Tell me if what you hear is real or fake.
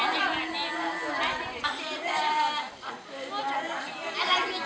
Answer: real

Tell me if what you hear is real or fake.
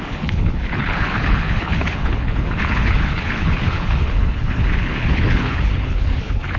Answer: fake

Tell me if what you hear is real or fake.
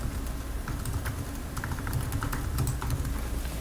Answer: real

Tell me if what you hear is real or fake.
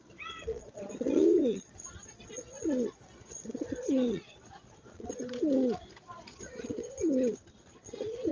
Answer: fake